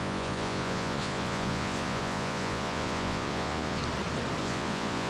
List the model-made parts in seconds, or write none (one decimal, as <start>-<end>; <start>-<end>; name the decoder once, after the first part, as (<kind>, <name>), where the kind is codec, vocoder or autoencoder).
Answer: 0.0-3.8 (vocoder, Vocos); 4.4-5.1